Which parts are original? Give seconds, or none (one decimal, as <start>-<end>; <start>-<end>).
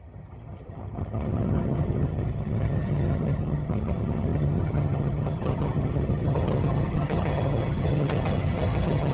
none